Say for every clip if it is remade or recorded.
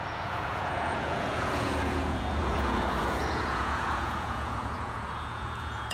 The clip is remade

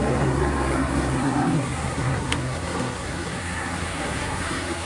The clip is remade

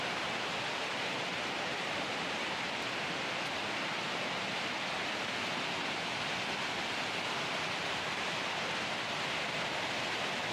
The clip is recorded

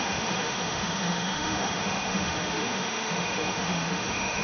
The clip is remade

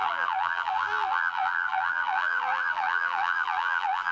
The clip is remade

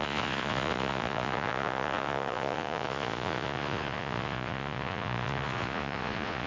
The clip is remade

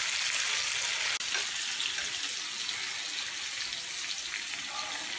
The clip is recorded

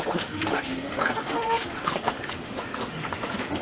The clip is remade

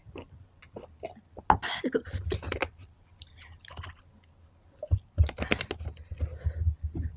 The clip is recorded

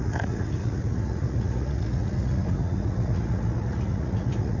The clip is remade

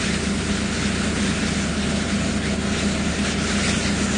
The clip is recorded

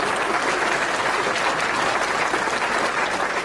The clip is recorded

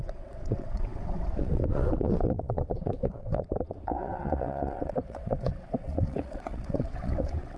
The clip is remade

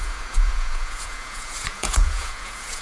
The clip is remade